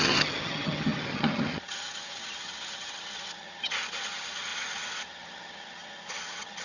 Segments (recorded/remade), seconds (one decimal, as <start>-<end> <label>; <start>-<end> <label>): 0.0-6.6 remade